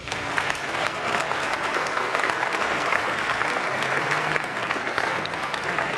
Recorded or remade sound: remade